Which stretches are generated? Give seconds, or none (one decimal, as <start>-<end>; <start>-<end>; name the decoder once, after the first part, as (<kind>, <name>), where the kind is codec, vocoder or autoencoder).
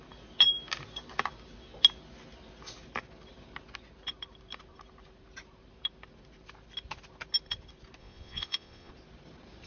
8.0-8.9 (vocoder, Vocos)